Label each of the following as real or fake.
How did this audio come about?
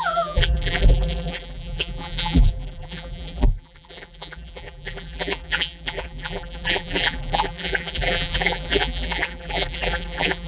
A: fake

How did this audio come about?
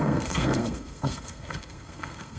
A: fake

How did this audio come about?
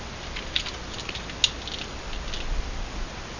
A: real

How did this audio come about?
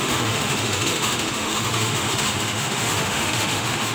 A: fake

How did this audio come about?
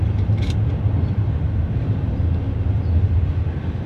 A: real